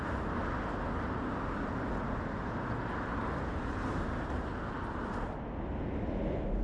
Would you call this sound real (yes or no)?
yes